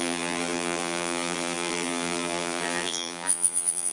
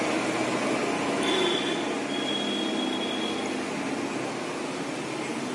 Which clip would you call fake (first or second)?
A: first